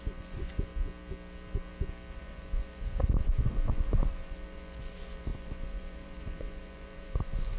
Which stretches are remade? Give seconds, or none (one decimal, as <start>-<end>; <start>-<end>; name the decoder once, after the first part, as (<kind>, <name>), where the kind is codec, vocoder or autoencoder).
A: 0.0-0.7 (vocoder, Vocos); 2.2-7.6